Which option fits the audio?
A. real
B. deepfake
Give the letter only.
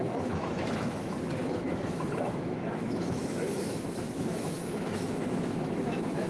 B